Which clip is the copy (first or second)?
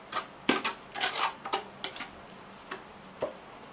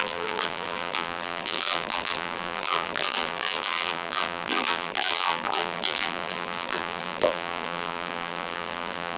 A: second